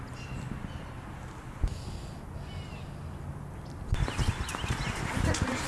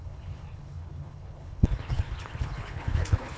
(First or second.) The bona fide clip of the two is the first